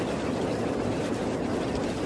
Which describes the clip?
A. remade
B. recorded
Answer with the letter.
B